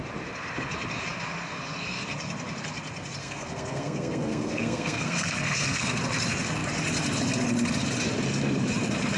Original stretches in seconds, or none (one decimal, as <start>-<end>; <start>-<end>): 0.0-3.2; 6.0-9.2